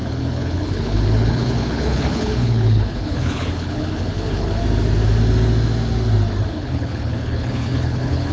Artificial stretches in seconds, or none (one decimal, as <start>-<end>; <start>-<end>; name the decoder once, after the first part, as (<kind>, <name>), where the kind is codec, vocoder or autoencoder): 0.0-4.6 (codec, HILCodec); 6.5-8.3